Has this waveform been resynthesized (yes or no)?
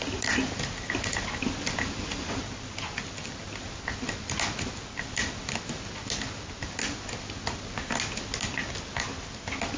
no